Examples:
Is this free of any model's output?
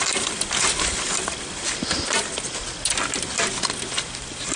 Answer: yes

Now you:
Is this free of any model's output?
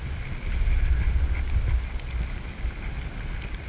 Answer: yes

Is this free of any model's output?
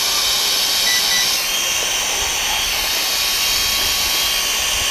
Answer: yes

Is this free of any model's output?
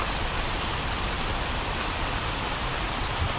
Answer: yes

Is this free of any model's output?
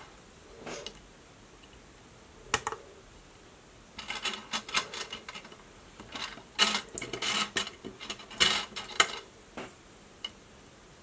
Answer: yes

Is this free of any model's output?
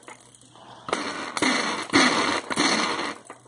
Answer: yes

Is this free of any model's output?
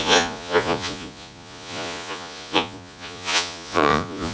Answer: no